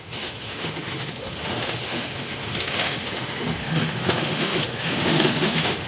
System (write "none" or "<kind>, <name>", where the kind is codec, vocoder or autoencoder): autoencoder, DAC-VAE